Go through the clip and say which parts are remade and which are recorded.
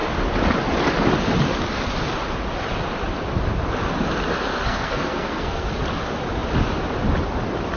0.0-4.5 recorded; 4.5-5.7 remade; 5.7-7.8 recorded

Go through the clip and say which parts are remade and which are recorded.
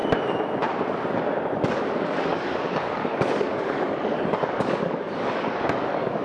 0.0-1.7 recorded; 1.7-6.2 remade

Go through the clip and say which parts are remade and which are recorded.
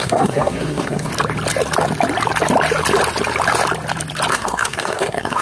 0.0-1.1 remade; 1.1-4.3 recorded; 4.3-5.4 remade